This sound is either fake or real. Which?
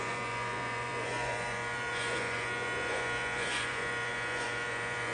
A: fake